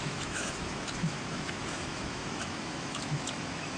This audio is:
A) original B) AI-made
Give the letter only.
B